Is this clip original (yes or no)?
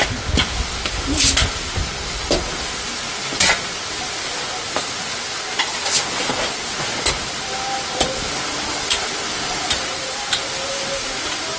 yes